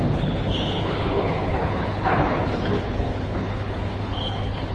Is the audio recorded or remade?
remade